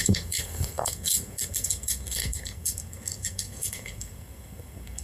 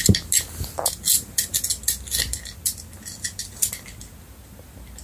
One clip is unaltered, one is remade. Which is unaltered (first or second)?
second